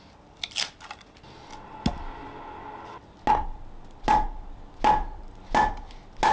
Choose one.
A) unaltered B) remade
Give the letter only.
A